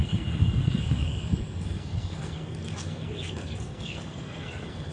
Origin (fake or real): fake